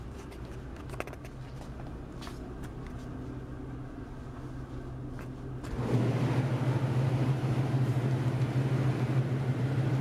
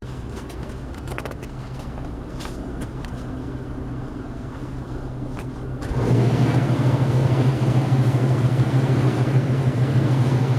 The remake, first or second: second